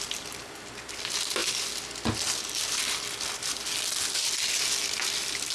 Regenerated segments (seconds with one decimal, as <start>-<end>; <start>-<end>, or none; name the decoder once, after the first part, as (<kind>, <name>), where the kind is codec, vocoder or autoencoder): none